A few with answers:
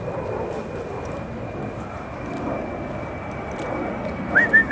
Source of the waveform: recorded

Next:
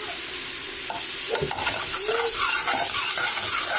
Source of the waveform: recorded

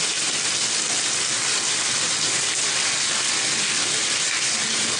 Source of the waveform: recorded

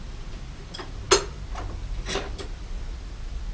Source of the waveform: recorded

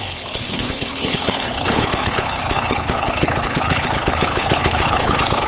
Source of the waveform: remade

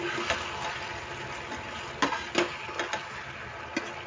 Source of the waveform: recorded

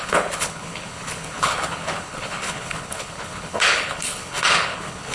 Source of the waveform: remade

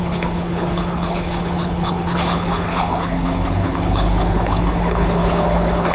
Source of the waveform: remade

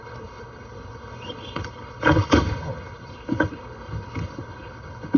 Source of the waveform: remade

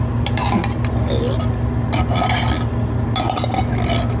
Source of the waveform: recorded